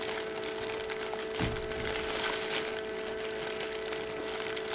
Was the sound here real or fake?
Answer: real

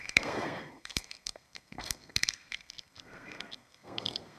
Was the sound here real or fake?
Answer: fake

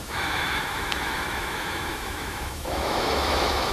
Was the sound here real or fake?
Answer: fake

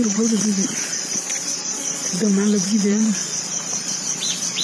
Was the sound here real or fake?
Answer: fake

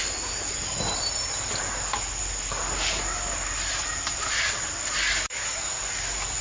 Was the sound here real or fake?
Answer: real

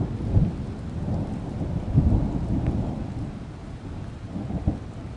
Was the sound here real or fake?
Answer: real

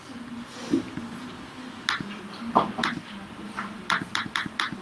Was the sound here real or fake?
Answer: real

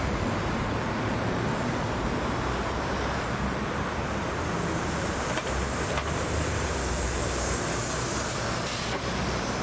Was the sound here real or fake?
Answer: fake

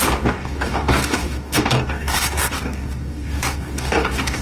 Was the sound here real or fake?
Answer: fake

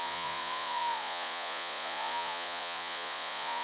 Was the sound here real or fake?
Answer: fake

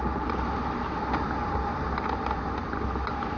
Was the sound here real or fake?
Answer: real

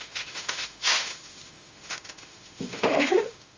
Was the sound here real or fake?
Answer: fake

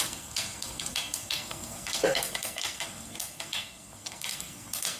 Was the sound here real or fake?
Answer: fake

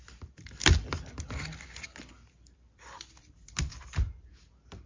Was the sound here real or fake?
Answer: fake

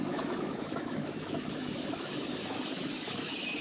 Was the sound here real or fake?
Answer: fake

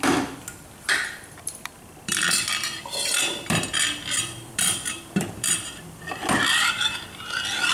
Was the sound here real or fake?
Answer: fake